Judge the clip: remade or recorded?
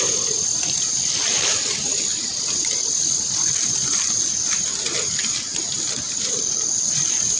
recorded